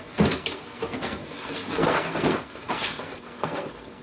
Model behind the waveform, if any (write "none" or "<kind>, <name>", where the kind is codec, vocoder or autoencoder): codec, SNAC